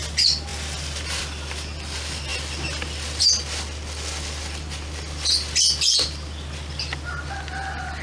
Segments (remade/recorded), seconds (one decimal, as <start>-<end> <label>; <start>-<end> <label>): 0.0-8.0 recorded